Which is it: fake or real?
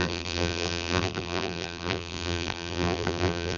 fake